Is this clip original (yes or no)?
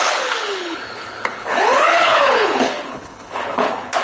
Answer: no